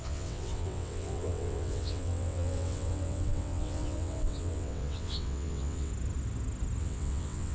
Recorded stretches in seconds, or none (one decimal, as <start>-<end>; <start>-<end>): 5.9-6.8